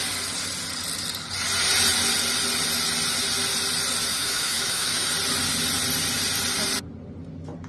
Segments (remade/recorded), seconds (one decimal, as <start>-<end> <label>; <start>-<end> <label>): 0.0-4.1 recorded; 4.1-5.1 remade; 5.1-7.7 recorded